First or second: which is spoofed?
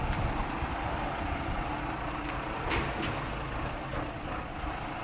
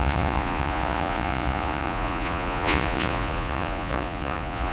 second